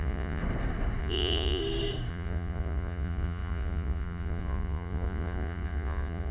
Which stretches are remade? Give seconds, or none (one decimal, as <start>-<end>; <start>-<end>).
0.0-0.4; 1.0-1.6; 2.1-6.3